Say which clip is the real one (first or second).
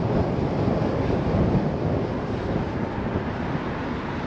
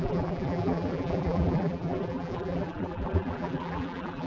first